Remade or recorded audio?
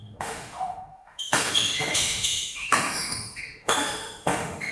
remade